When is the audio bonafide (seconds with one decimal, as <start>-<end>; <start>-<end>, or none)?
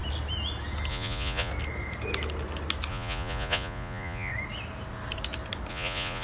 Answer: 0.0-0.9; 1.5-2.9; 4.3-5.7